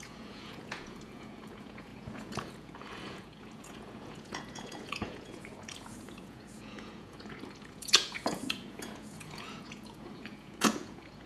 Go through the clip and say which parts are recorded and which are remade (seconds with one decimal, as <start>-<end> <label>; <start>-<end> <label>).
0.0-11.3 remade